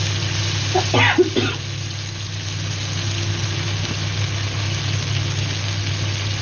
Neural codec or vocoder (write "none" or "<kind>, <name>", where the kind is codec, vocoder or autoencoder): none